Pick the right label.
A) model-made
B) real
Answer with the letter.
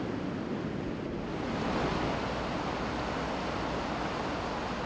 B